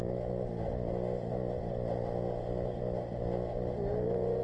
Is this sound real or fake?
real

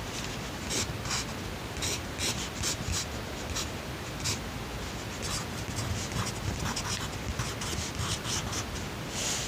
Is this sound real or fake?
real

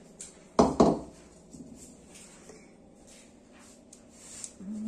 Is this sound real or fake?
real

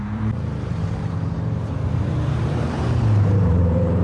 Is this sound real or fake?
fake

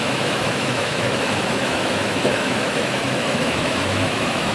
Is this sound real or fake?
fake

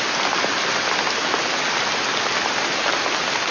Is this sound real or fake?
real